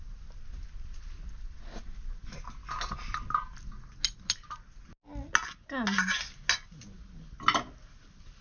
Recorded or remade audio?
recorded